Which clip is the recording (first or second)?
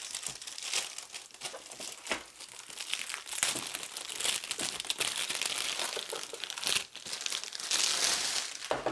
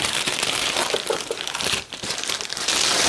first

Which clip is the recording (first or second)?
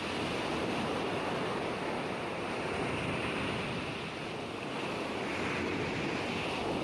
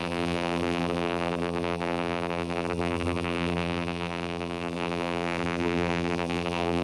first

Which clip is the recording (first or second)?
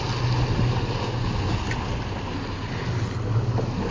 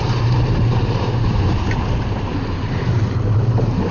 first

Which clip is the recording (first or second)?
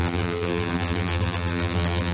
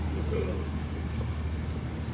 second